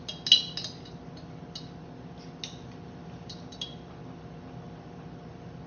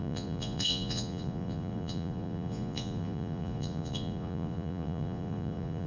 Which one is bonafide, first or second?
first